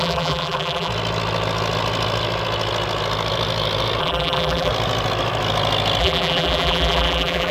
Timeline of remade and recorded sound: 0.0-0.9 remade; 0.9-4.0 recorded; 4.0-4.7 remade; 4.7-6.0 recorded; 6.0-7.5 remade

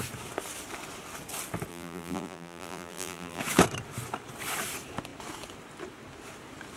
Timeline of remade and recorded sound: 0.0-1.7 recorded; 1.7-3.4 remade; 3.4-6.8 recorded